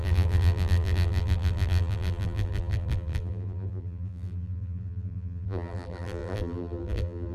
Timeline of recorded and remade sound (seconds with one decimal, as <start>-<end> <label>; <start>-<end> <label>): 0.0-7.3 remade